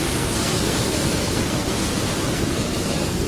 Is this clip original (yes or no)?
no